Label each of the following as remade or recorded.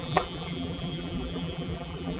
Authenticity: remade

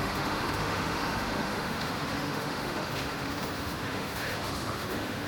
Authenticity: remade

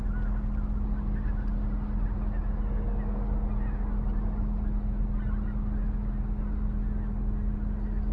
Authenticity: recorded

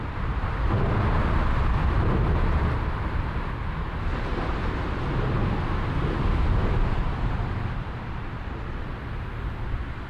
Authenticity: recorded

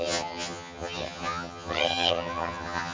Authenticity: remade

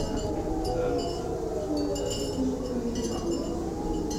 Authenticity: recorded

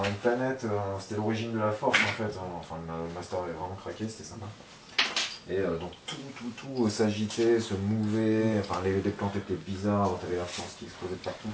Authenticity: recorded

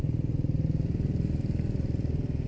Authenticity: recorded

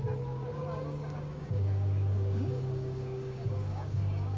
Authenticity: remade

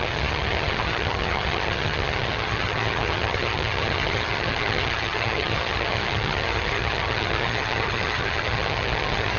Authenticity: remade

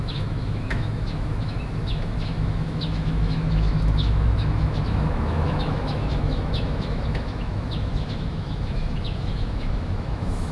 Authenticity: remade